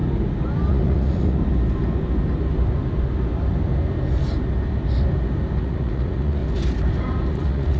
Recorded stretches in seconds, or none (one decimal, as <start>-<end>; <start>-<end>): 0.0-0.7; 1.4-5.6; 6.4-7.3